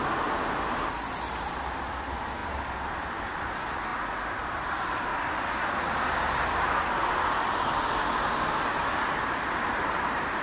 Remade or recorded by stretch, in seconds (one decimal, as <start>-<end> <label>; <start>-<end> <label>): 0.0-3.9 remade; 3.9-4.5 recorded; 4.5-5.1 remade; 5.1-9.7 recorded; 9.7-10.4 remade